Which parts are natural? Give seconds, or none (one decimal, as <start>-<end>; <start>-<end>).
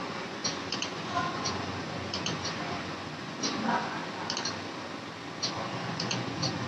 4.0-5.4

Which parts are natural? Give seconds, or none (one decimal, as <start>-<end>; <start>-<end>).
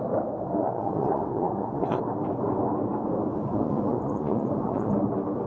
0.0-0.6; 2.0-3.4; 4.9-5.5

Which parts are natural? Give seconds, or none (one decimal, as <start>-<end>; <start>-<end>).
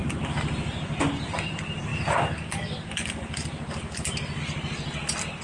0.0-5.4